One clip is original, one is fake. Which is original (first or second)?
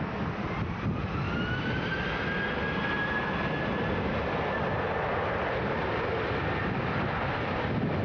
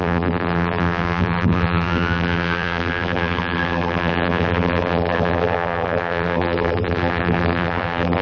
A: first